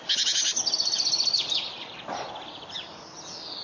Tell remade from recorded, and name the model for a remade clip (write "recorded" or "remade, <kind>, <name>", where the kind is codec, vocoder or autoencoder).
recorded